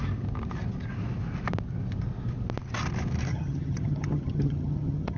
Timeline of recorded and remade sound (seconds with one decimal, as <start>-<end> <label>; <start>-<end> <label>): 0.0-3.3 recorded; 3.3-5.2 remade